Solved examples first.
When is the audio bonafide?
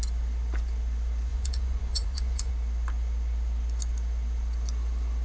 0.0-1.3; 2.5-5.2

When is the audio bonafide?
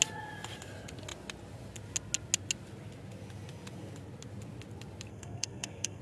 0.0-5.1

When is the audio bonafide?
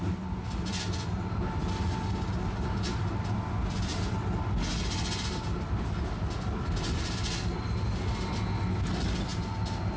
0.0-10.0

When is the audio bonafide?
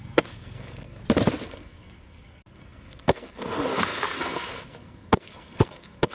1.0-1.5